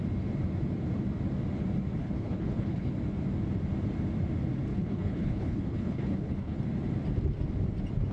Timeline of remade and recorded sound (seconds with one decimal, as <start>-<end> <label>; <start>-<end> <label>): 0.0-2.0 recorded; 2.0-2.9 remade; 2.9-4.7 recorded; 4.7-6.6 remade; 6.6-8.1 recorded